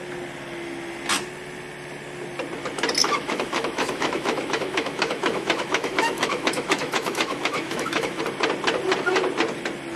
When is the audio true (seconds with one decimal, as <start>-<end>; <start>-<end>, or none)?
0.0-3.0; 8.2-10.0